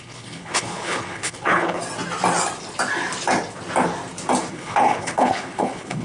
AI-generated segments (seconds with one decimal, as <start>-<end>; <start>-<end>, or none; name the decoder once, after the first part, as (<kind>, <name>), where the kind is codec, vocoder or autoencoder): 0.0-1.8 (codec, HILCodec); 4.5-6.0